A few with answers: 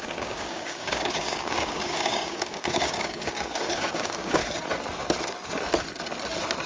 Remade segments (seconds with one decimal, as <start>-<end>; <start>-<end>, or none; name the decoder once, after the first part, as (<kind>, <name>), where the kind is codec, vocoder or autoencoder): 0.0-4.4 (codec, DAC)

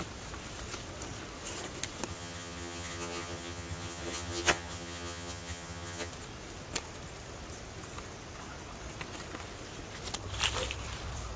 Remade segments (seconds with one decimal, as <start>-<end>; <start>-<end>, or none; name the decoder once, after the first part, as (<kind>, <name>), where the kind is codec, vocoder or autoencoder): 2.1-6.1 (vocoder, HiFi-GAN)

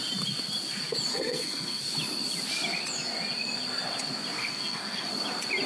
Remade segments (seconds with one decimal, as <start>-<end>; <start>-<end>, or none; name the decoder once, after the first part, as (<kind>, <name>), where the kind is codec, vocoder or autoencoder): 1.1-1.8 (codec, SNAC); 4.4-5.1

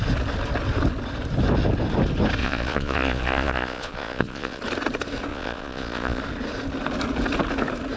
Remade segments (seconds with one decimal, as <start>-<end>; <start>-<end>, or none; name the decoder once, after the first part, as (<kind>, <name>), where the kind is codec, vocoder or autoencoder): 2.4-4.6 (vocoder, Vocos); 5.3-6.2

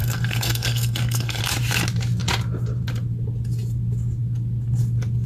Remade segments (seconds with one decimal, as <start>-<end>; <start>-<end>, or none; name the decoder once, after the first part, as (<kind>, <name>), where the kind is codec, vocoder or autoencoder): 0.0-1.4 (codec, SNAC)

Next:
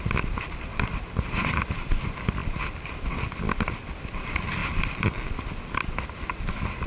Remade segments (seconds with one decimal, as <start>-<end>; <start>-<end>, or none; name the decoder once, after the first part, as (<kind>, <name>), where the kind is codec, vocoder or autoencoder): none